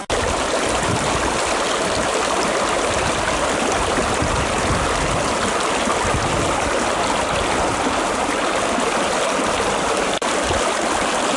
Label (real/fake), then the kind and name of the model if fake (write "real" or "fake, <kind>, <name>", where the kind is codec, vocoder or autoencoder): real